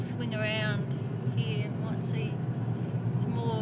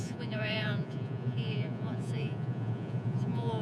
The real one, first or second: first